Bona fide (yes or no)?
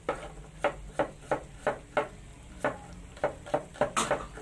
yes